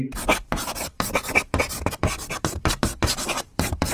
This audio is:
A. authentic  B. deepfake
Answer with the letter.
B